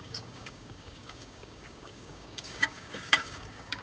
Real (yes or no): no